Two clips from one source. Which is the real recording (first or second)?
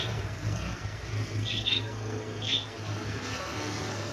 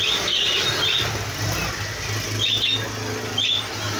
second